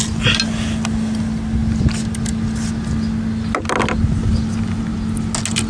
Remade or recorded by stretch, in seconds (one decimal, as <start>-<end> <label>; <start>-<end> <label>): 0.0-5.7 recorded